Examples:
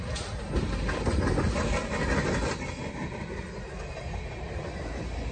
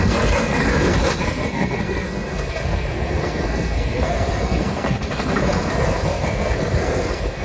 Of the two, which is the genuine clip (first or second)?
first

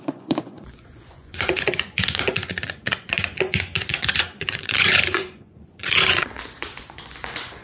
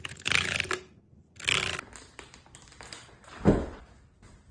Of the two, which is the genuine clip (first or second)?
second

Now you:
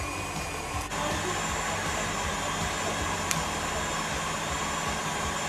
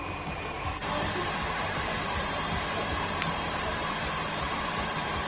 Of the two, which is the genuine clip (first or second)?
first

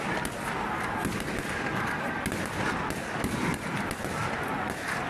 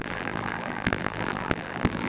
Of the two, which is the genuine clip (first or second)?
first